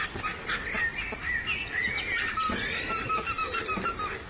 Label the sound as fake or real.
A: real